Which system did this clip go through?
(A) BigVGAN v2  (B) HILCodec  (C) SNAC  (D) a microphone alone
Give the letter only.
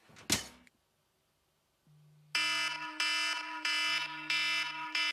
D